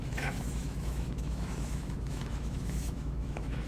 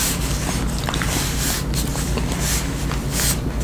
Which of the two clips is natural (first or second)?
second